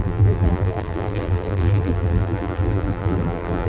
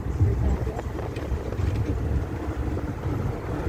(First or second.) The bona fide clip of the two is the second